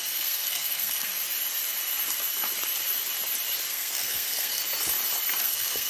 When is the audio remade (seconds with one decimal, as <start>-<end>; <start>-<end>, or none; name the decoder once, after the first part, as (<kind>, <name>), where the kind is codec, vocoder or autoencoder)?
0.0-1.1 (codec, SNAC); 3.7-4.6; 5.4-5.9

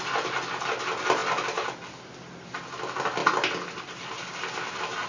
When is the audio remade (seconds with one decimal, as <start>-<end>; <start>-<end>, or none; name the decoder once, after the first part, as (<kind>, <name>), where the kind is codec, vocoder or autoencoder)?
none

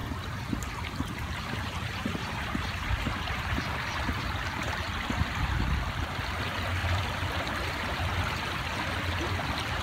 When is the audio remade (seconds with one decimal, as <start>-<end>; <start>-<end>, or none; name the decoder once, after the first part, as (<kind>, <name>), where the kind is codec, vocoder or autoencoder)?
0.0-0.9 (vocoder, BigVGAN v2); 2.0-5.6; 6.8-8.4

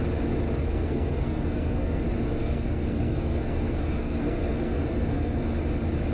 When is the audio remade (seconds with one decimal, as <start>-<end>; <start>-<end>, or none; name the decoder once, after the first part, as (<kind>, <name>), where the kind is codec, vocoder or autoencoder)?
0.6-2.0 (codec, SNAC); 2.4-5.4

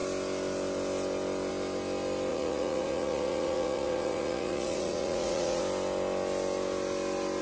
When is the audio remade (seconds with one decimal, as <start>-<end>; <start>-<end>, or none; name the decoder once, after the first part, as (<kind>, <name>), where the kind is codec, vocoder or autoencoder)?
2.3-5.6 (vocoder, Vocos)